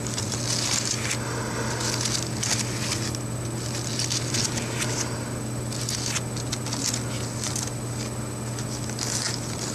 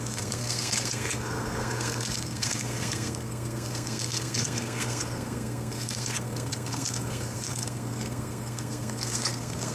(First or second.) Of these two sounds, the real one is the first